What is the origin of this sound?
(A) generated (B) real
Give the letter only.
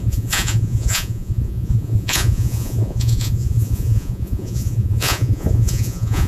A